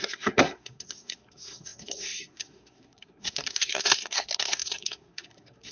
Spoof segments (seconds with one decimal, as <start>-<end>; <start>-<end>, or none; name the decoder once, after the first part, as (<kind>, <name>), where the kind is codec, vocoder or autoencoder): 0.0-5.7 (codec, SNAC)